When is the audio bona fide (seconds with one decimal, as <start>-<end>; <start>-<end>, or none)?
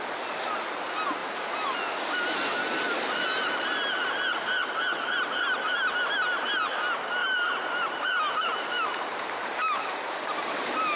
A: 0.0-1.2; 1.8-7.2